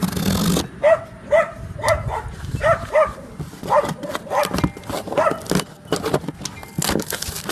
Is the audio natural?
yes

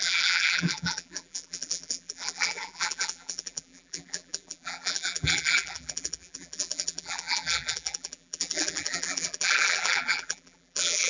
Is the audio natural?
no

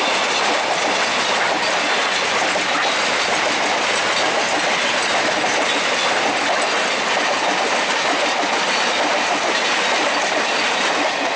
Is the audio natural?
no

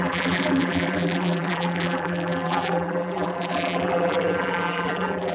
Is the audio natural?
no